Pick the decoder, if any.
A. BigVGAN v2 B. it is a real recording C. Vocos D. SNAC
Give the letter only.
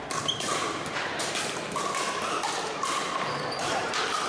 A